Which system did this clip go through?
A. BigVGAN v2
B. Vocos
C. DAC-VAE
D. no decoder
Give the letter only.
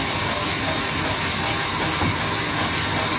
D